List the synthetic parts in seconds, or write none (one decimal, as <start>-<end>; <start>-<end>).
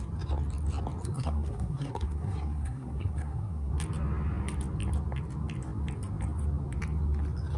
1.0-3.7